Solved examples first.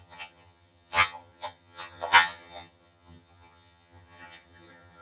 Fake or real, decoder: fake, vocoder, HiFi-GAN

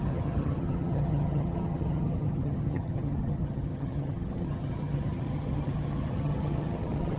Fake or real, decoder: fake, vocoder, HiFi-GAN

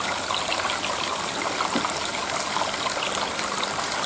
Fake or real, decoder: real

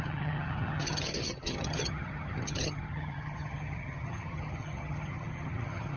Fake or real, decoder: fake, vocoder, HiFi-GAN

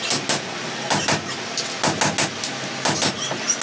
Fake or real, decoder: real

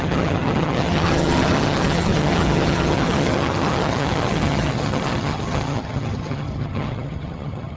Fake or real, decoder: fake, vocoder, HiFi-GAN